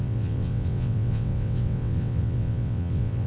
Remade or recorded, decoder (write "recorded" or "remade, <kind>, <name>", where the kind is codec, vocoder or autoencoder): remade, vocoder, WaveNeXt